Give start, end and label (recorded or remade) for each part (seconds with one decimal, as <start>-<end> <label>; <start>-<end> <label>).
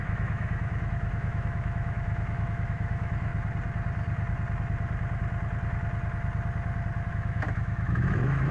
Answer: 0.0-3.3 remade; 3.3-7.1 recorded; 7.1-8.5 remade